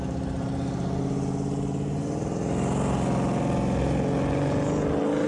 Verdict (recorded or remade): recorded